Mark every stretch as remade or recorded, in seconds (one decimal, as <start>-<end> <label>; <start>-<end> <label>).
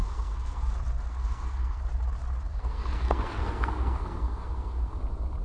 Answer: 0.0-0.7 remade; 0.7-1.1 recorded; 1.1-1.8 remade; 1.8-2.6 recorded; 2.6-5.0 remade; 5.0-5.4 recorded